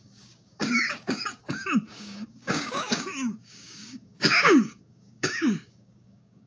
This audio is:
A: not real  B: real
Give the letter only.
A